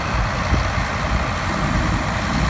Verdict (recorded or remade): recorded